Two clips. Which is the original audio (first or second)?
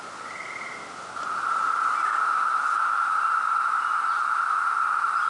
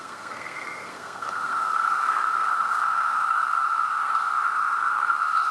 first